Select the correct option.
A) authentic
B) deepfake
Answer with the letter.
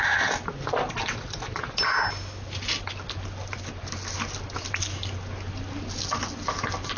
A